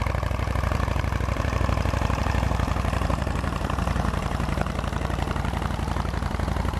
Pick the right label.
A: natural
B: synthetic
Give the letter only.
B